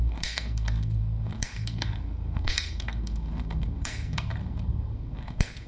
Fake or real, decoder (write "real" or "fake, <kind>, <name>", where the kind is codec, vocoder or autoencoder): fake, codec, SNAC